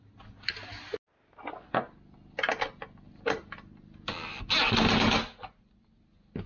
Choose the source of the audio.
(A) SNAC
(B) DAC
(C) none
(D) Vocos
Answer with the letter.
C